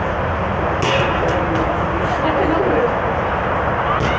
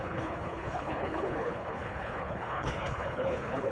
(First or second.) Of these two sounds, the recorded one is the first